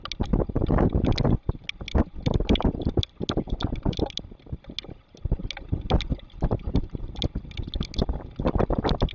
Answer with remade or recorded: recorded